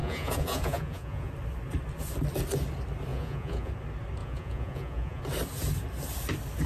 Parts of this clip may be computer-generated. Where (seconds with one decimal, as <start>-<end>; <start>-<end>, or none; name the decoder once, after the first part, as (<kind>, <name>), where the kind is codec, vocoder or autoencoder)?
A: 0.0-1.3 (vocoder, Vocos); 3.1-3.7; 4.2-5.2